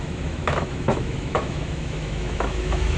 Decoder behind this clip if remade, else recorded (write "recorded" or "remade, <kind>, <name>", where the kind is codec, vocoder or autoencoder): remade, autoencoder, DAC-VAE